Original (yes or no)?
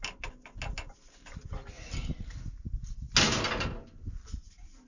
yes